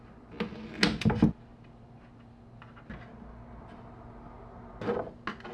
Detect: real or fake real